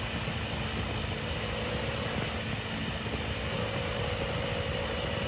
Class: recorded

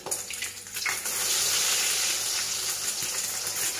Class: recorded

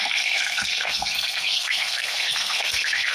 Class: remade